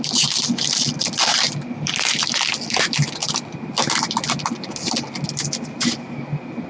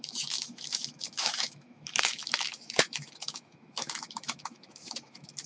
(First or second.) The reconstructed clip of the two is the second